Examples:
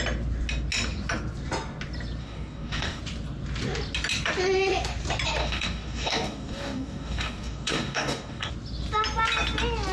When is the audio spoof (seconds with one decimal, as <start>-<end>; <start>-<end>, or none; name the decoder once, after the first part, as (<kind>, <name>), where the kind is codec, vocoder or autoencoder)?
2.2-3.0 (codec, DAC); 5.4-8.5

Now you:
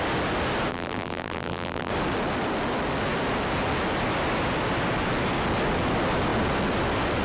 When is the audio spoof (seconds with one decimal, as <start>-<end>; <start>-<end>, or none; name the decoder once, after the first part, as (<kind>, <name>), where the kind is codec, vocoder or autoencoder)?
0.7-1.9 (vocoder, BigVGAN v2)

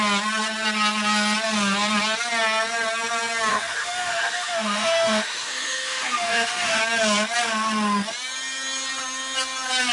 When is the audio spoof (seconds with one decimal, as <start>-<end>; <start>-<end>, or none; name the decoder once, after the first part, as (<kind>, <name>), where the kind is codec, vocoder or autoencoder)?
3.5-6.8 (autoencoder, DAC-VAE)

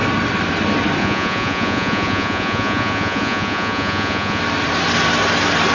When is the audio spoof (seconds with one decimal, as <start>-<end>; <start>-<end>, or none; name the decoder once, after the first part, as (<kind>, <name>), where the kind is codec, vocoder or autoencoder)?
1.0-4.4 (vocoder, Vocos)